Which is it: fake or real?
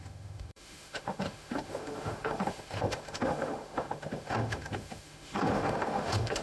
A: fake